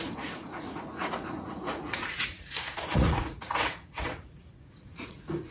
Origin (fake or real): fake